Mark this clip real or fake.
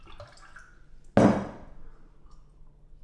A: real